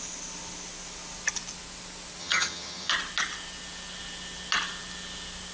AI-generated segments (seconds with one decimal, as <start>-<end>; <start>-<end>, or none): 2.2-2.9